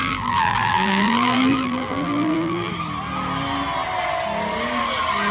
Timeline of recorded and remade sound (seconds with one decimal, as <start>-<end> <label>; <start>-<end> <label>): 0.0-2.7 remade; 2.7-5.3 recorded